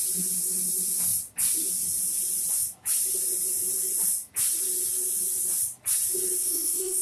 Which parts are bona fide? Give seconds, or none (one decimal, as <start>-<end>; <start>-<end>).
0.0-6.4